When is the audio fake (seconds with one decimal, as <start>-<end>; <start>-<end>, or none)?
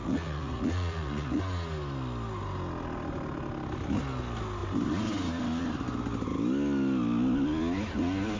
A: 0.0-1.4